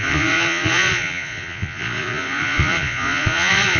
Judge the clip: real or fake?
fake